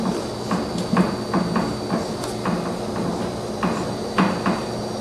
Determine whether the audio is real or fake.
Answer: real